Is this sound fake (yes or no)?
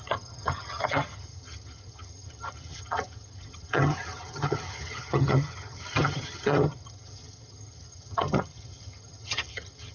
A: yes